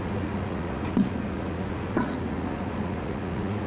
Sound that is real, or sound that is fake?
fake